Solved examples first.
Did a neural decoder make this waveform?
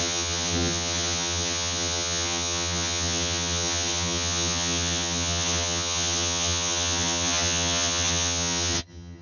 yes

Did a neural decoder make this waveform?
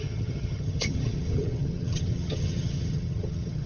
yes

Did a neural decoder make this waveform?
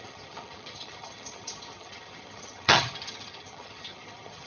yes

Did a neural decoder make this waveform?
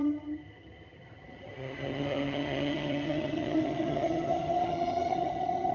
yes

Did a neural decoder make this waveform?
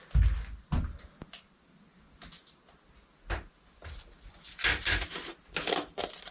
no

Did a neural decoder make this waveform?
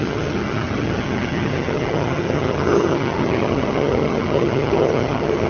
yes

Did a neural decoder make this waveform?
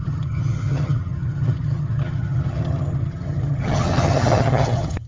yes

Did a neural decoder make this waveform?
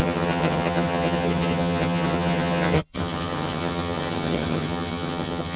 yes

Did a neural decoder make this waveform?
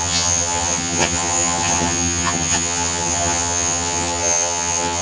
yes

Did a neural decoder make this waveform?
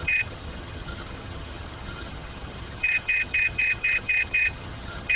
yes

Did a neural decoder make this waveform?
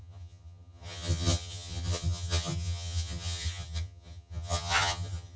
yes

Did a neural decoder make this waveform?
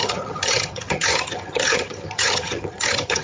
yes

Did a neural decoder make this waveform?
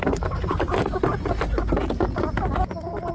no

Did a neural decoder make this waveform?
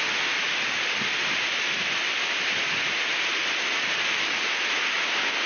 no